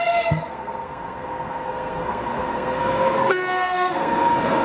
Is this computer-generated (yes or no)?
yes